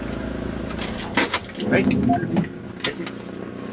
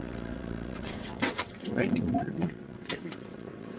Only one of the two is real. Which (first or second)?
first